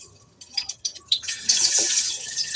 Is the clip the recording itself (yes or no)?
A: no